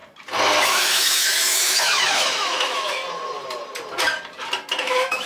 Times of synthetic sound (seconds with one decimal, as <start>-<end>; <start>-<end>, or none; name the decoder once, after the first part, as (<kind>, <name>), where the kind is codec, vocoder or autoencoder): 0.6-3.0 (autoencoder, DAC-VAE); 4.8-5.3

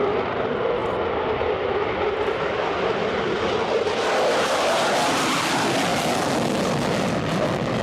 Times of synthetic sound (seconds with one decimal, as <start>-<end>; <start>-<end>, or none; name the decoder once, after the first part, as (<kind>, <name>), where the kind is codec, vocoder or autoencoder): none